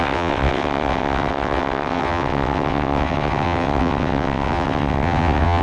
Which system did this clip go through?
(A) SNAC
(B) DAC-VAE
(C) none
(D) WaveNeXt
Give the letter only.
D